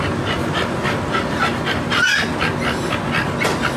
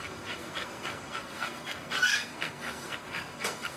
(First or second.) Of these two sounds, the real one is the first